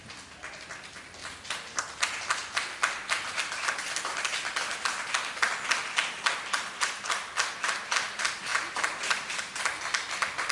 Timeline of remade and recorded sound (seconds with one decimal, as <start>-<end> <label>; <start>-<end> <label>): 0.0-1.2 recorded; 1.2-1.8 remade; 1.8-8.5 recorded; 8.5-9.6 remade; 9.6-10.5 recorded